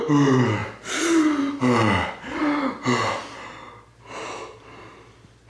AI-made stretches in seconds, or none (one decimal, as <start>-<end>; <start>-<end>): none